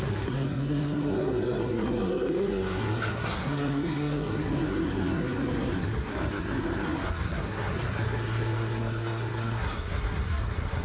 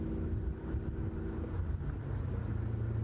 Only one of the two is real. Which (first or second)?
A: second